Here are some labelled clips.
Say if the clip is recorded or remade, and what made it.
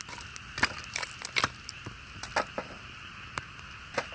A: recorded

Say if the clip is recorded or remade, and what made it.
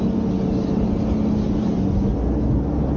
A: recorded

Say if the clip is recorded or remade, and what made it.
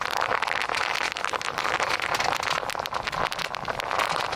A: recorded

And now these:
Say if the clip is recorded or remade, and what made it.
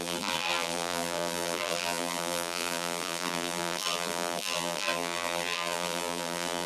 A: remade, vocoder, BigVGAN v2